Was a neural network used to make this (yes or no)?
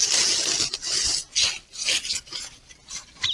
no